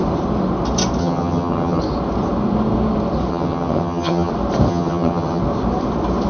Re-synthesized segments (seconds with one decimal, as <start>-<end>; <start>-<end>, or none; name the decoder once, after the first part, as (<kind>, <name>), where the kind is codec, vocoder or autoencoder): 1.0-1.8 (vocoder, HiFi-GAN); 3.3-4.3; 4.7-5.4